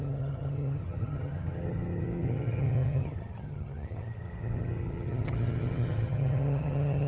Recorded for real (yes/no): no